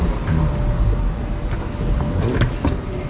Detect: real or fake real